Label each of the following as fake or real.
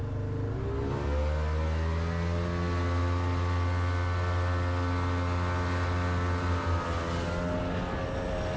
real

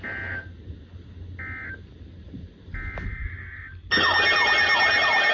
real